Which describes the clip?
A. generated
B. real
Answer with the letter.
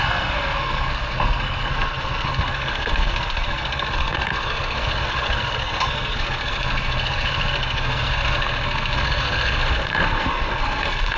A